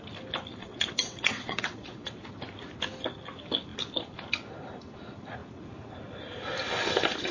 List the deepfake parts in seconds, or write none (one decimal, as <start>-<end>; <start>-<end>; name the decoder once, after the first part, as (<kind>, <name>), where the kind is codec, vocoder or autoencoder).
0.6-2.2 (vocoder, WaveNeXt)